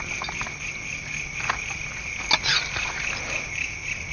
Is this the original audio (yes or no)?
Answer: yes